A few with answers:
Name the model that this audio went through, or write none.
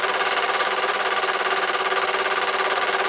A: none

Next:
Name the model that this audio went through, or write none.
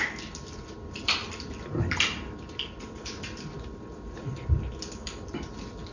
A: none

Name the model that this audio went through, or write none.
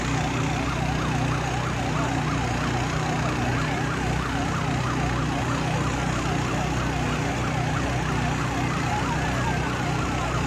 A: none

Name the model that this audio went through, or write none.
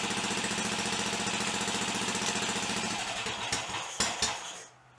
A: none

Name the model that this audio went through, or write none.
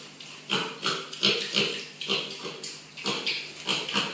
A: none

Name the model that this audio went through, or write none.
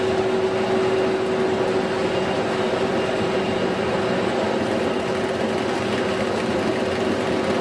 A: none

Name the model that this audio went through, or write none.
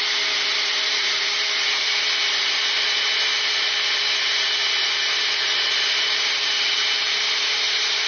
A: vocoder, BigVGAN v2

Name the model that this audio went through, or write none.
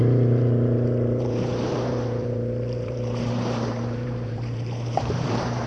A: vocoder, BigVGAN v2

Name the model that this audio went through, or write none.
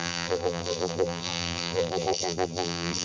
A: vocoder, BigVGAN v2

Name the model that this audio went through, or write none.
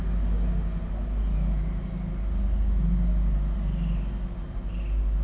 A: none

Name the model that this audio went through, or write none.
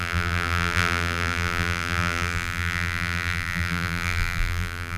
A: vocoder, BigVGAN v2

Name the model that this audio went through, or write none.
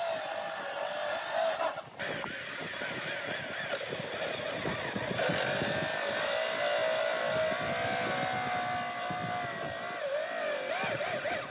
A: none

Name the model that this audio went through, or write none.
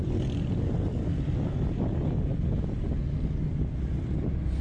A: none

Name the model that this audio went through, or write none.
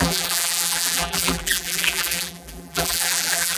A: vocoder, BigVGAN v2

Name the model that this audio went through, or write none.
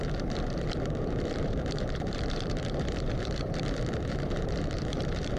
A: vocoder, BigVGAN v2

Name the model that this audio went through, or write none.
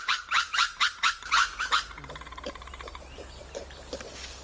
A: vocoder, BigVGAN v2